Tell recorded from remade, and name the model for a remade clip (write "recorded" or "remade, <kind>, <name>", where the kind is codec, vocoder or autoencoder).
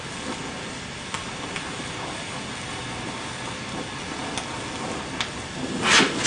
recorded